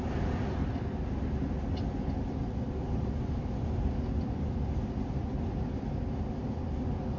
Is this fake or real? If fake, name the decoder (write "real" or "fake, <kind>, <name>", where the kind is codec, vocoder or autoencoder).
real